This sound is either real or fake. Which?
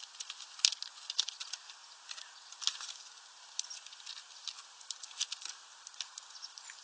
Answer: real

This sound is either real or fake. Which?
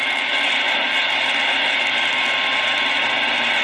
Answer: real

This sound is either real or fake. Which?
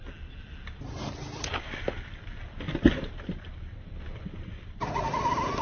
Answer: real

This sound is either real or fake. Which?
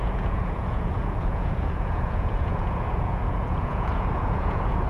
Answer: fake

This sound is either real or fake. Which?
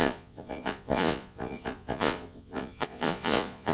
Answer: fake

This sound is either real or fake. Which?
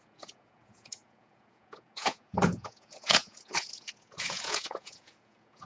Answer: fake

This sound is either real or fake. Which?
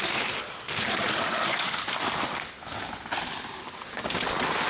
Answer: real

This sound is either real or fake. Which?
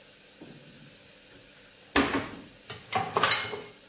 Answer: real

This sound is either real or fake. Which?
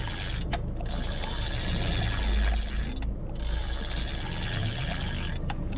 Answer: real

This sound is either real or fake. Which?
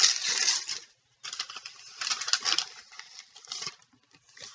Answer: real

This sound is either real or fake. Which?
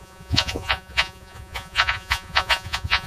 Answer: fake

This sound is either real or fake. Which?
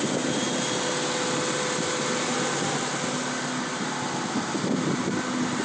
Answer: real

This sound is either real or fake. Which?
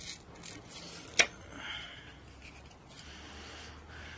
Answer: real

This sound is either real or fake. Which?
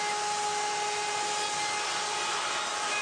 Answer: real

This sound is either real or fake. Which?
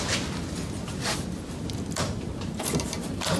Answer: real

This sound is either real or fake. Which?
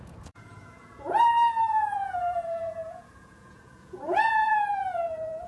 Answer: fake